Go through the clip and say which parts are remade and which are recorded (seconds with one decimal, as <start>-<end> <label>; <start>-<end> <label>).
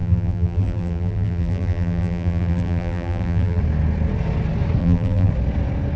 0.0-3.6 remade; 3.6-4.8 recorded; 4.8-5.3 remade; 5.3-6.0 recorded